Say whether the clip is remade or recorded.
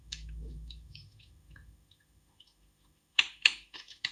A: remade